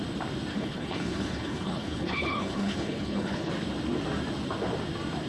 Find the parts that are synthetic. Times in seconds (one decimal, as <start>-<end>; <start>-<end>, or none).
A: 0.5-3.5

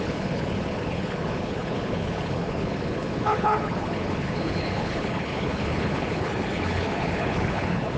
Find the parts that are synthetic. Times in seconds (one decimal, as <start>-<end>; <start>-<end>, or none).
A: 0.0-8.0

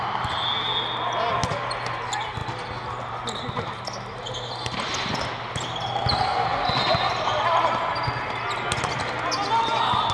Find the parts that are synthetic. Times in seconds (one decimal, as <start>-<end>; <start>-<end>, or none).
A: none

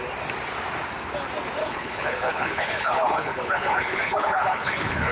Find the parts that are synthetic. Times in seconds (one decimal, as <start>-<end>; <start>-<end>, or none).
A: 1.6-5.1

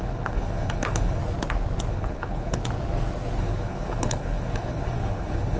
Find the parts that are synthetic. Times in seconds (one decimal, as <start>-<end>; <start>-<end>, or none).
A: 0.0-1.2; 1.9-2.6; 3.4-5.6

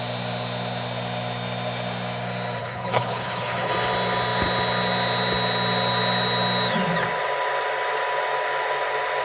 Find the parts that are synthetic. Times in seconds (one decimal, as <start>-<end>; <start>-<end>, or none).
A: 2.6-3.7

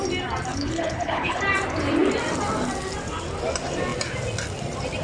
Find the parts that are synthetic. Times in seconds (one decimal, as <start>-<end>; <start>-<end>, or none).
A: 0.5-1.4

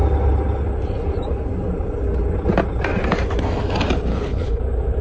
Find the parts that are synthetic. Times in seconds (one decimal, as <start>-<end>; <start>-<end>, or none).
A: 4.1-4.6